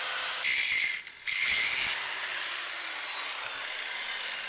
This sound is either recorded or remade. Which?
recorded